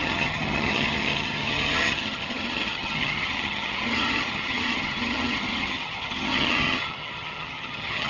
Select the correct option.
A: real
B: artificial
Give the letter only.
B